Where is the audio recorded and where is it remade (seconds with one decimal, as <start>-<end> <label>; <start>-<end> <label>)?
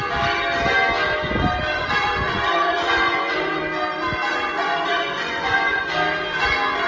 0.0-1.7 recorded; 1.7-3.6 remade; 3.6-4.3 recorded; 4.3-5.8 remade; 5.8-6.9 recorded